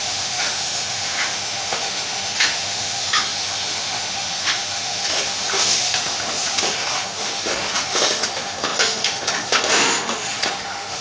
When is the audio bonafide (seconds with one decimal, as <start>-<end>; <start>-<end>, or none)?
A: none